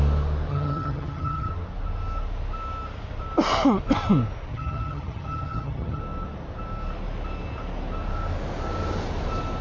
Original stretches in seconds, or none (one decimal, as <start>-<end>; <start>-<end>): 0.0-0.5; 1.5-4.5; 6.0-9.6